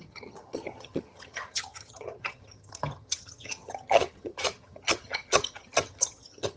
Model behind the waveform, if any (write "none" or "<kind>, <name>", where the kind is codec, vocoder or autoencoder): vocoder, HiFi-GAN